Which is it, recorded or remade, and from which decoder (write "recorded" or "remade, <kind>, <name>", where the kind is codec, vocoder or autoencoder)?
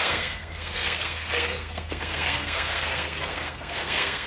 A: remade, codec, SNAC